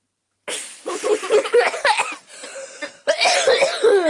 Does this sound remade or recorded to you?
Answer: recorded